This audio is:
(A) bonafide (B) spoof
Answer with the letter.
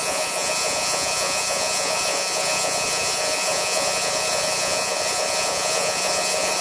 B